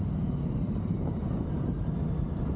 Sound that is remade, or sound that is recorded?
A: recorded